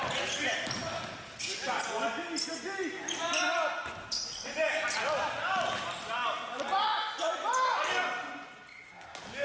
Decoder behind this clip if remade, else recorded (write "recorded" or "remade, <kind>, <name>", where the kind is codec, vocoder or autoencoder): recorded